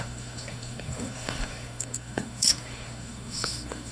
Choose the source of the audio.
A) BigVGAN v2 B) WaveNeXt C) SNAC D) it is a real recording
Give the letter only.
C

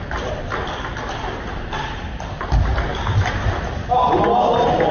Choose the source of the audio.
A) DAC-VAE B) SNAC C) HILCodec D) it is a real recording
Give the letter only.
D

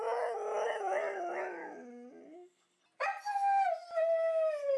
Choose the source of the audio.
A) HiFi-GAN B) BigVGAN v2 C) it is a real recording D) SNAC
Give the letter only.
C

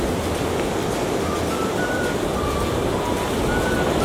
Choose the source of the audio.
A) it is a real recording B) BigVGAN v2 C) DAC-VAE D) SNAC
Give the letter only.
A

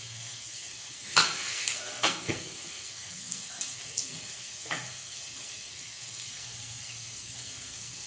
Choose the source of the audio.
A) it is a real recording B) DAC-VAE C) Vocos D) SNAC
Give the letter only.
D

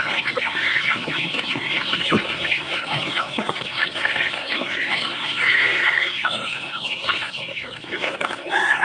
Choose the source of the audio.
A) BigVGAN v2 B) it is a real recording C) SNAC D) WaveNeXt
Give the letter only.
C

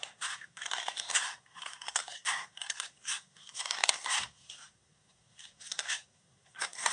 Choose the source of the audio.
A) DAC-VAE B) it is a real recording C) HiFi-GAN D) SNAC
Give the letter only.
D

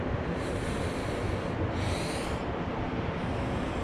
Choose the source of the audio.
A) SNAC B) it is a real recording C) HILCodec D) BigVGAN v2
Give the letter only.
B